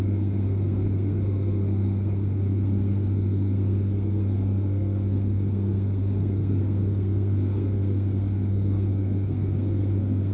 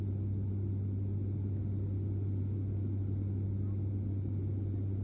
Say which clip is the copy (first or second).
first